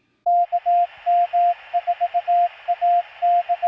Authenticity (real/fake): real